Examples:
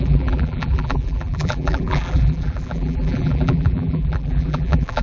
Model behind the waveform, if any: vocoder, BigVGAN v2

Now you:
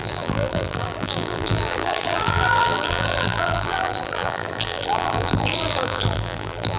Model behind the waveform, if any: vocoder, BigVGAN v2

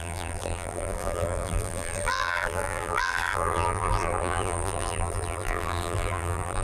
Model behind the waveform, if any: vocoder, BigVGAN v2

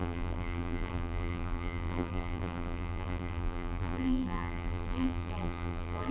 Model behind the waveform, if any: vocoder, BigVGAN v2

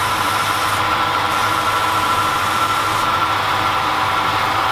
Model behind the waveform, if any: vocoder, BigVGAN v2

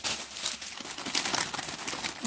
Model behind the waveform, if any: none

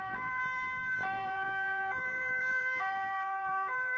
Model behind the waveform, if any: vocoder, BigVGAN v2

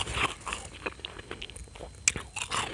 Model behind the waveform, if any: none